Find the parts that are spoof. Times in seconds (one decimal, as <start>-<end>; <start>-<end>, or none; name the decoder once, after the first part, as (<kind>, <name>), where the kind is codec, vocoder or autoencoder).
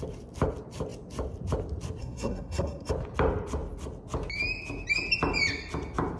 2.0-2.9 (codec, SNAC)